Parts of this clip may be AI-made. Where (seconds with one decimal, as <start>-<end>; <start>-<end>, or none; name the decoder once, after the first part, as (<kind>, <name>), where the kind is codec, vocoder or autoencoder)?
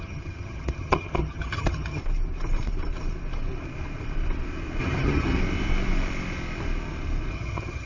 0.0-2.0 (vocoder, HiFi-GAN); 4.8-5.4; 7.3-7.9